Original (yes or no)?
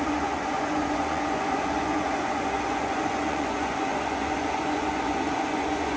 no